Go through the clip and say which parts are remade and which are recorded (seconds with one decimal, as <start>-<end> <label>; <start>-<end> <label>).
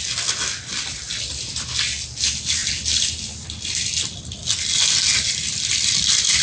0.0-6.4 recorded